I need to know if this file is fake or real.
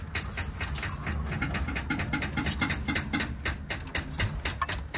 real